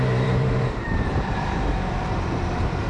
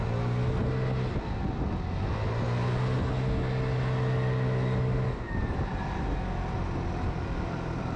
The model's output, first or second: first